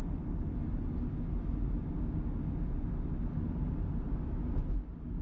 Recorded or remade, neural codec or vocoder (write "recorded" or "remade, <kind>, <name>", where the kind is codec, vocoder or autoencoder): recorded